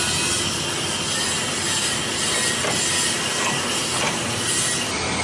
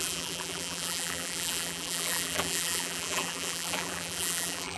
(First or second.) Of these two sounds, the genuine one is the first